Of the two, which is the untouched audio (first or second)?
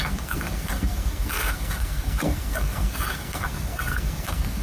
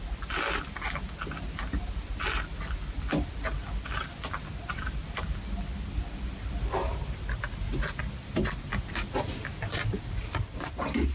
second